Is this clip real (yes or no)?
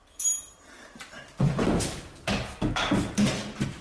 yes